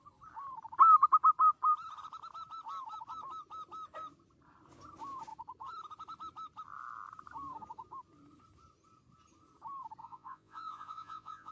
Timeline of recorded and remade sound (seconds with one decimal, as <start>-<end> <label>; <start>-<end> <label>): 0.0-10.0 recorded; 10.0-11.5 remade